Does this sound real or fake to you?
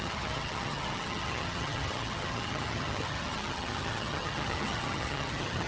fake